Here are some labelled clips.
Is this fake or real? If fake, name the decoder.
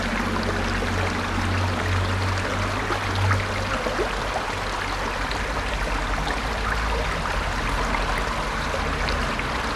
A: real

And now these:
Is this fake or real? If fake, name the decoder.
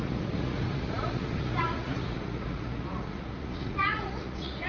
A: fake, vocoder, Vocos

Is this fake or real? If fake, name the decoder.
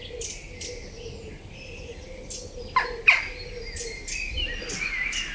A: real